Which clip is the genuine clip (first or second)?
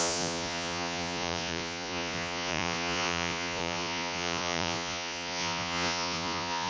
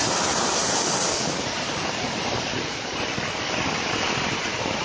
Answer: second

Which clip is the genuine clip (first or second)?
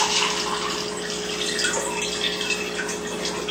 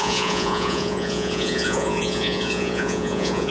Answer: first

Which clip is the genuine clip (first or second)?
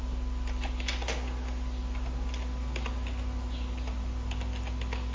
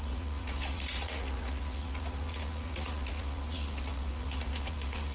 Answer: first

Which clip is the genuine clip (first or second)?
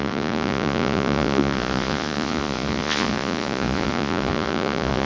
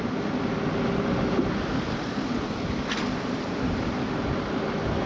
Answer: second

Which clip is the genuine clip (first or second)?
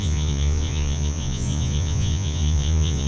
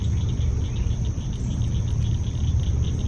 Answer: second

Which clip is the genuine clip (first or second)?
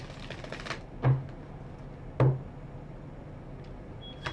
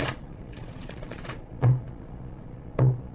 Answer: first